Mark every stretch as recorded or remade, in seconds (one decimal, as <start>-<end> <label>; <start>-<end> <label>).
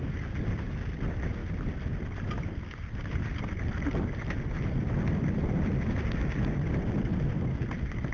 0.0-8.1 recorded